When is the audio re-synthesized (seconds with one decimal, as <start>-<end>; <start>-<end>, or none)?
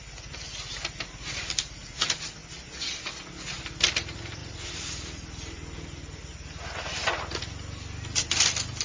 none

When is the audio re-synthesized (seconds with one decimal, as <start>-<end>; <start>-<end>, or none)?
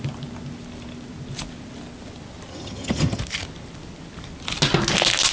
2.5-3.2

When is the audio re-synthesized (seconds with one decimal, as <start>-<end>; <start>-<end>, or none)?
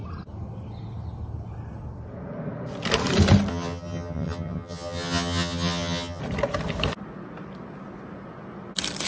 3.5-6.2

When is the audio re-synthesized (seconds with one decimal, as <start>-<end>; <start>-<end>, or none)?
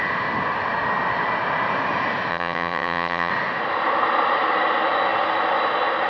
2.3-3.3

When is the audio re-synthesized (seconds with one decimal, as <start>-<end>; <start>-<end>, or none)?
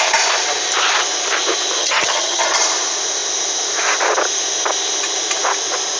1.8-2.5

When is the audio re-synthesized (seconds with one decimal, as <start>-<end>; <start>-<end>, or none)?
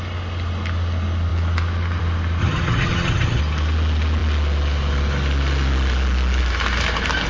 2.4-3.4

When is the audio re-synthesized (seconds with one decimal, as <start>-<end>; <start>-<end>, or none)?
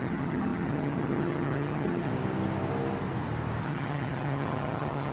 0.0-2.1; 3.6-5.1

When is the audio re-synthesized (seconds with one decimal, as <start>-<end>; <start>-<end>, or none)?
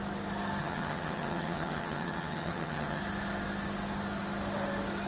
0.6-3.0